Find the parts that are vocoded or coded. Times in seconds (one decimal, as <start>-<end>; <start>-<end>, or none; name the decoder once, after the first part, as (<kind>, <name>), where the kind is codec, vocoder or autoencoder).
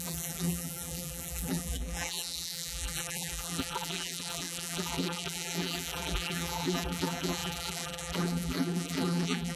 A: 0.0-9.6 (vocoder, BigVGAN v2)